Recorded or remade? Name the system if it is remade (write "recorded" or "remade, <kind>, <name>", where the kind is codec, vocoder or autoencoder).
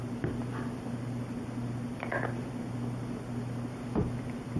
recorded